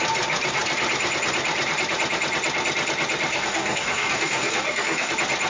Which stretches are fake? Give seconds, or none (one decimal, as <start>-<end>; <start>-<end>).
3.3-5.1